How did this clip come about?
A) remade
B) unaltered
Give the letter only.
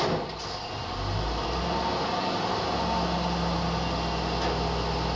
B